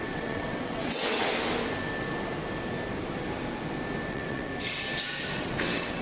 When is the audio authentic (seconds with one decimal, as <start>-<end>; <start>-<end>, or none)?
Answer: 1.3-4.1; 4.5-5.4